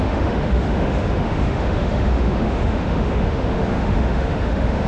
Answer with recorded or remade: remade